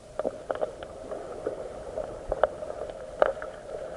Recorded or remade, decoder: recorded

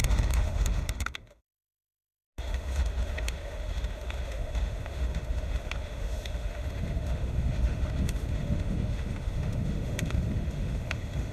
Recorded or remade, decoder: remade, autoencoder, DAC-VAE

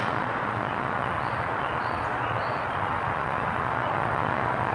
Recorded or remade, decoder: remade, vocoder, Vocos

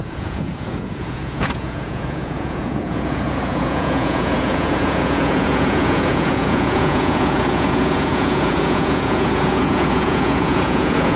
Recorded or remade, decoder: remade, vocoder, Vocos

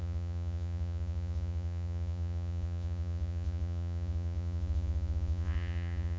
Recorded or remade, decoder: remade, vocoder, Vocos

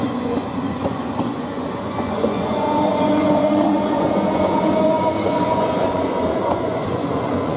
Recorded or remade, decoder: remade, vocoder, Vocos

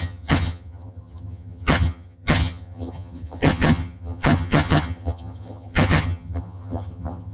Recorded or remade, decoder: remade, vocoder, HiFi-GAN